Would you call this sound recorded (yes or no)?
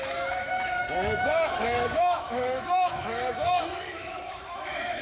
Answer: no